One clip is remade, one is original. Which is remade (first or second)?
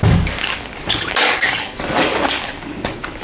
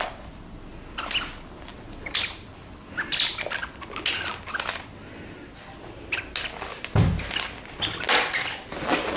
first